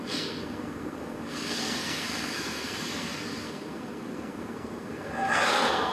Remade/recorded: remade